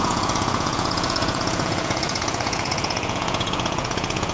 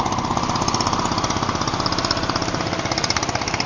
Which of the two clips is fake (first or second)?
first